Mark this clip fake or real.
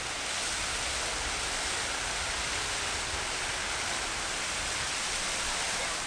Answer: real